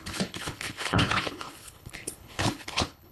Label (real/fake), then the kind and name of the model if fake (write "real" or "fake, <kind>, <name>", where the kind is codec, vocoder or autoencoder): fake, codec, HILCodec